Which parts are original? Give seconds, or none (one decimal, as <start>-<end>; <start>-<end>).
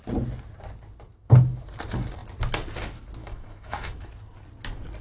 0.0-3.2; 4.1-5.0